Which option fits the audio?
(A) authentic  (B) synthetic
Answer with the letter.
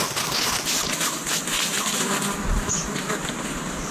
A